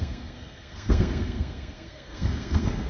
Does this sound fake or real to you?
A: fake